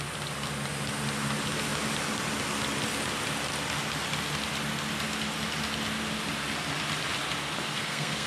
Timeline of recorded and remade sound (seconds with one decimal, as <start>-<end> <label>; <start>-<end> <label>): 0.0-7.7 recorded; 7.7-8.3 remade